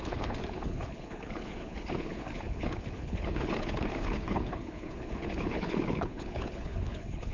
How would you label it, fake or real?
fake